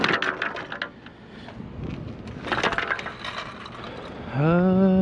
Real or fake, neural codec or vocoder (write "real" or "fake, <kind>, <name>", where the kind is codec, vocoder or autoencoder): real